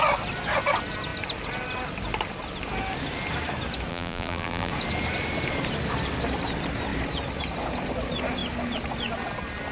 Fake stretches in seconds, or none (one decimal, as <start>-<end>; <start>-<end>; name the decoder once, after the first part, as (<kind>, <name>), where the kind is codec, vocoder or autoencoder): 3.9-4.7 (vocoder, BigVGAN v2)